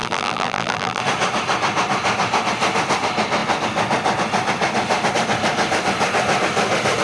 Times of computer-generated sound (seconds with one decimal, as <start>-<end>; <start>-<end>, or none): 0.0-1.0

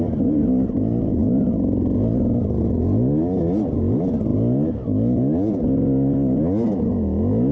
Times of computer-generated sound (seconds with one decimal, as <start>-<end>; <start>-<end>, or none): none

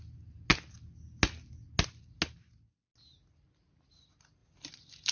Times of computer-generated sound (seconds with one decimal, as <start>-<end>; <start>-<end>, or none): none

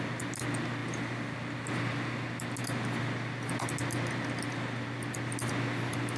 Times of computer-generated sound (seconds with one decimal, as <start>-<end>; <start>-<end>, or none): none

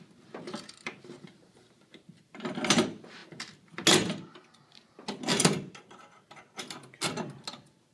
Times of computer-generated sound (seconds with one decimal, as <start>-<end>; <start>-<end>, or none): none

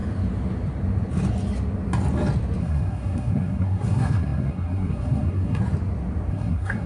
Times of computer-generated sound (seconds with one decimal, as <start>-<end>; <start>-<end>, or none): 2.6-5.6; 6.3-6.9

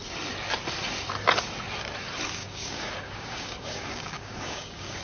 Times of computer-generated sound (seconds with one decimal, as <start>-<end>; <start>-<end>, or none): 2.4-5.0

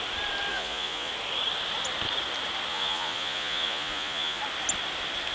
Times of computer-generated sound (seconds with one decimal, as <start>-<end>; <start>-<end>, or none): 0.5-1.1; 2.7-4.4